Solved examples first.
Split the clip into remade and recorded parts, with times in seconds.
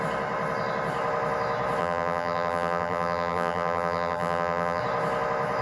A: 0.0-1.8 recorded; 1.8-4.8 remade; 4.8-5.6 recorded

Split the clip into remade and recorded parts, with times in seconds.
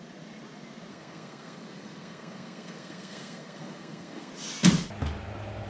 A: 0.0-0.9 recorded; 0.9-4.3 remade; 4.3-5.7 recorded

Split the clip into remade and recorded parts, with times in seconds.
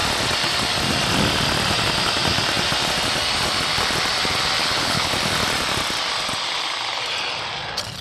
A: 0.0-4.6 recorded; 4.6-5.1 remade; 5.1-8.0 recorded